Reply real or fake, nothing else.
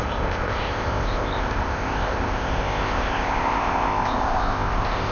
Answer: fake